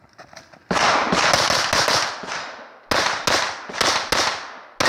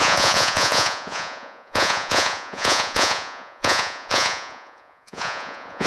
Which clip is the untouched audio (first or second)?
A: first